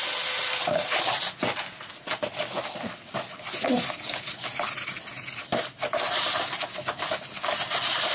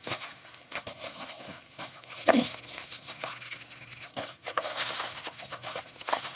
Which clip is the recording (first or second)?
first